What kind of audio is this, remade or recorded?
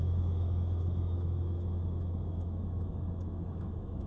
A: remade